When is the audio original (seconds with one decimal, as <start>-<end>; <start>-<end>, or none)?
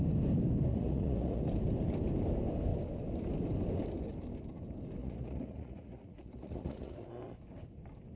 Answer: 0.0-0.7; 1.4-5.0; 7.1-8.2